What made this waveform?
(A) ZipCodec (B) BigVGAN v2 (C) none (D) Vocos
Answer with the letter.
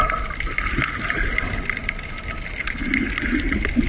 C